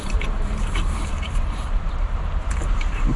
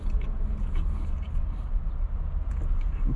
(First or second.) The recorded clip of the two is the second